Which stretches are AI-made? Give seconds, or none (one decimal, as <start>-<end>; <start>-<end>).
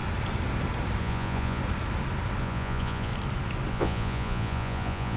1.0-1.6; 2.4-3.1; 3.7-5.2